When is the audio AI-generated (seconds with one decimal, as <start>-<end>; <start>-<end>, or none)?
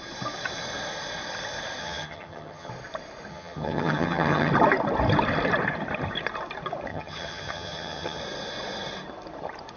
1.8-2.7; 3.3-4.5; 6.9-8.2